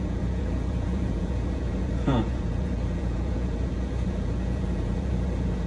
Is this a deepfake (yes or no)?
yes